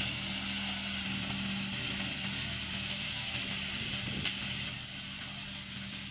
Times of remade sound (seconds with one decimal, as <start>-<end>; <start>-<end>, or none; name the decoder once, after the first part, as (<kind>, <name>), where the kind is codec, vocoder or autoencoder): 2.7-3.3 (autoencoder, DAC-VAE)